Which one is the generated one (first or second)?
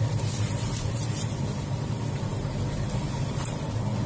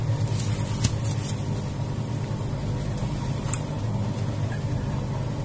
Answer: first